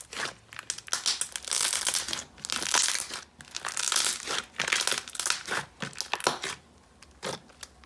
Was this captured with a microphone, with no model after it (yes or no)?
yes